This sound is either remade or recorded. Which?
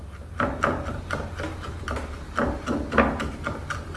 recorded